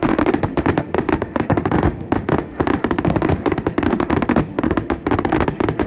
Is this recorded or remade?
remade